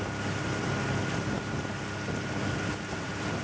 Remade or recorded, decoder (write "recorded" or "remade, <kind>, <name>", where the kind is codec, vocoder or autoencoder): recorded